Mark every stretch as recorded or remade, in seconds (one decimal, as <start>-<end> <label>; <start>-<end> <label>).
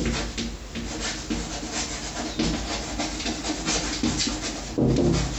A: 0.0-5.4 recorded